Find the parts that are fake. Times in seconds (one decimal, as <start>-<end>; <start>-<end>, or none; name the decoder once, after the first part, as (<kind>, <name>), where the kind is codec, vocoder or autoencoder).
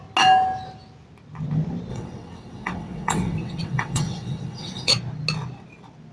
1.9-4.9 (vocoder, WaveNeXt)